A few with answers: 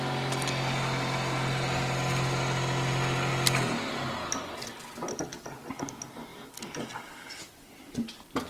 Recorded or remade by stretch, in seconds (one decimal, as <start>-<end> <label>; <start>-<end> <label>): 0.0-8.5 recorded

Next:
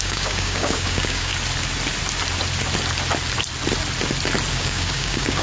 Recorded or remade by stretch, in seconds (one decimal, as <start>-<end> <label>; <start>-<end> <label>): 0.0-1.3 remade; 1.3-4.5 recorded; 4.5-5.4 remade

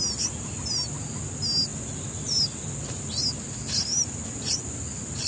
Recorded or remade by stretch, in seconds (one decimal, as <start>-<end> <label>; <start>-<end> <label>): 0.0-5.3 recorded

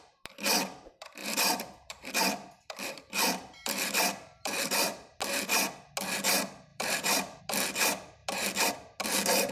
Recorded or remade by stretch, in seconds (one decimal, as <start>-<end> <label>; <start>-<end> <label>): 0.0-1.2 recorded; 1.2-5.2 remade; 5.2-6.7 recorded; 6.7-7.4 remade; 7.4-9.5 recorded

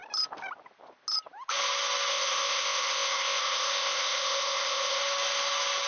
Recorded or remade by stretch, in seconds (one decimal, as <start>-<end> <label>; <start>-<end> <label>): 0.0-2.1 recorded; 2.1-5.0 remade; 5.0-5.9 recorded

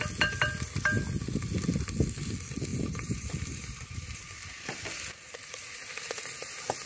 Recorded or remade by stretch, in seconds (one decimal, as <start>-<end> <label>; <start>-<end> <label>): 0.0-2.7 recorded; 2.7-6.9 remade